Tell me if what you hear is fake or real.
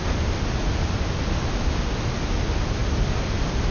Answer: real